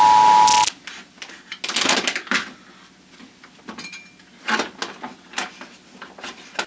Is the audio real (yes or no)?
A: yes